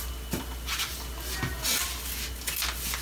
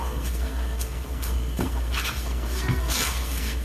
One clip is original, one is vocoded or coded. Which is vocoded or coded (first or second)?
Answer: second